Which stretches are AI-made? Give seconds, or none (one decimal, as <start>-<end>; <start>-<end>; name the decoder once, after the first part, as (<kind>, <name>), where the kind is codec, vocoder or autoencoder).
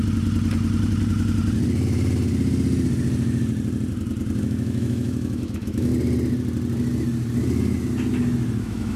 4.4-5.9 (autoencoder, DAC-VAE); 8.6-9.0